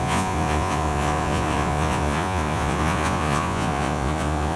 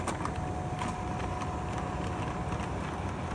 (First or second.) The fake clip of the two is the first